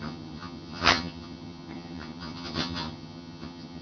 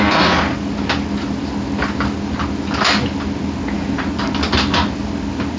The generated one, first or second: first